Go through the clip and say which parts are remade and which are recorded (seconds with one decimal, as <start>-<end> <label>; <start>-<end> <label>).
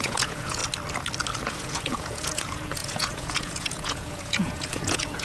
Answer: 0.0-0.6 remade; 0.6-1.4 recorded; 1.4-5.2 remade